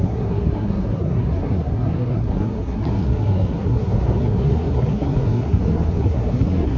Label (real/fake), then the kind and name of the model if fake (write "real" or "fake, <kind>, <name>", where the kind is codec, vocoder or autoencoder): fake, codec, SNAC